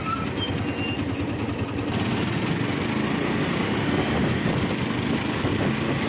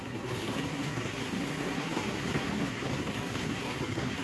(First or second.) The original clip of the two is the first